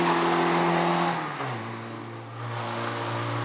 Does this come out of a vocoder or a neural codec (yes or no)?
no